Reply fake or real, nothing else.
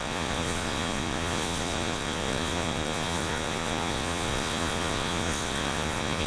fake